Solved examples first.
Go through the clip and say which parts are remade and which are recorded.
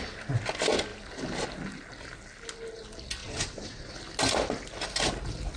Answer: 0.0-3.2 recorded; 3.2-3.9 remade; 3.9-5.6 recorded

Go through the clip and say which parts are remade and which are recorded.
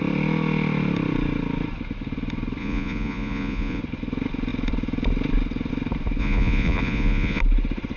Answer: 0.0-2.6 recorded; 2.6-3.8 remade; 3.8-6.2 recorded; 6.2-7.4 remade; 7.4-8.0 recorded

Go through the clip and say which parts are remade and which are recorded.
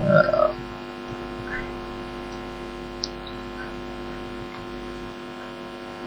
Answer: 0.0-6.1 recorded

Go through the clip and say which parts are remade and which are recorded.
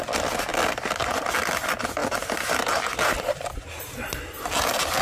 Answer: 0.0-5.0 recorded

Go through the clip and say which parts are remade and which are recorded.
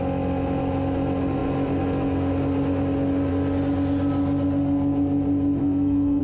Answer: 0.0-5.6 recorded; 5.6-6.2 remade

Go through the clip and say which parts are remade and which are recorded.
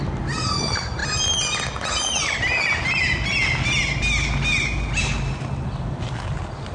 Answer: 0.0-6.7 recorded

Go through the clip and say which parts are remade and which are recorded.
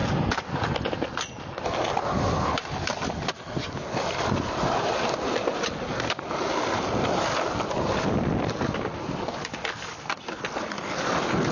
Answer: 0.0-11.5 recorded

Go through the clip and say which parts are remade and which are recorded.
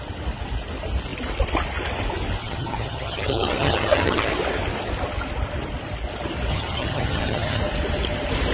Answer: 0.0-2.4 recorded; 2.4-4.3 remade; 4.3-6.5 recorded; 6.5-7.6 remade; 7.6-8.5 recorded